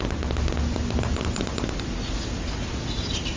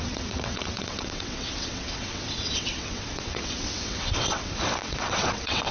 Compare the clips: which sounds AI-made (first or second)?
second